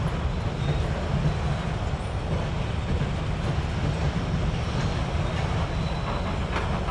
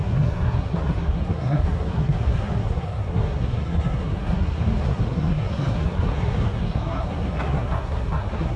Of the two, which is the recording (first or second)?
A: first